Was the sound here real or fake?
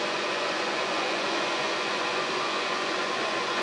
fake